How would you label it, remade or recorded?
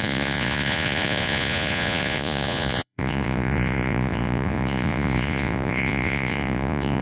remade